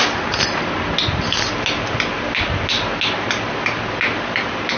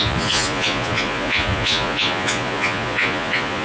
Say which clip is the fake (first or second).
second